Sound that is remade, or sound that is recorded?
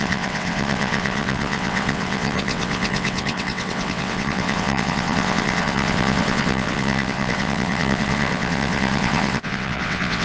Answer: remade